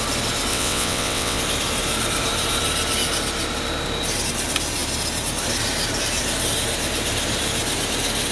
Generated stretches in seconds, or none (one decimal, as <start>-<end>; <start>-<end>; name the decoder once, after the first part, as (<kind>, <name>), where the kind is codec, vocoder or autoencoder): 0.5-1.4 (vocoder, WaveNeXt)